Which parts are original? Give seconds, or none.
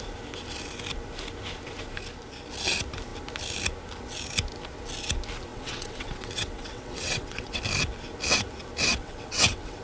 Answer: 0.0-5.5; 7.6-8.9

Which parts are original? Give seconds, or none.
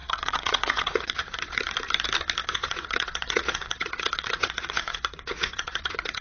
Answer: 1.6-2.4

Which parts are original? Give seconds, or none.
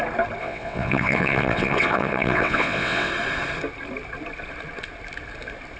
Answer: 0.0-0.4; 3.1-5.8